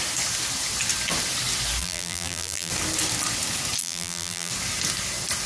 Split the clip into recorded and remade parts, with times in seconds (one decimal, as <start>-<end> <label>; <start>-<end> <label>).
0.0-1.8 recorded; 1.8-2.7 remade; 2.7-3.8 recorded; 3.8-4.5 remade; 4.5-5.5 recorded